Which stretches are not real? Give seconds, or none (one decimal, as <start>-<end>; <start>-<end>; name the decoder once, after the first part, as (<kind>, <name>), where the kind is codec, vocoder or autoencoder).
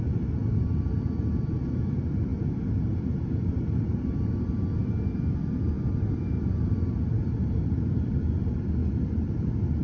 0.0-2.3 (vocoder, BigVGAN v2); 5.4-9.8